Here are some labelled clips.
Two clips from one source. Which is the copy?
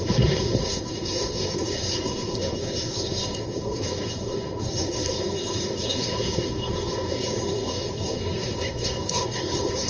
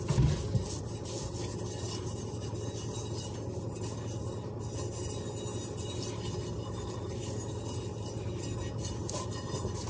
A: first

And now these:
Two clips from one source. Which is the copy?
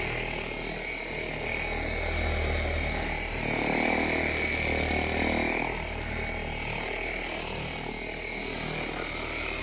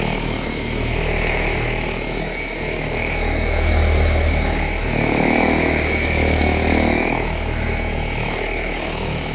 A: second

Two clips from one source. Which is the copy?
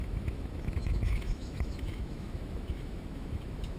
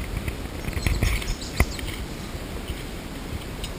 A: first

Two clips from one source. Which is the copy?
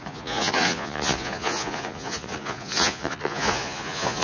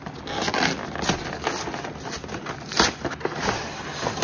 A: first